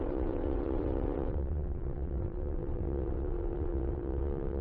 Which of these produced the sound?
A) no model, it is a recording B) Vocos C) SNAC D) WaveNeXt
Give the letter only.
D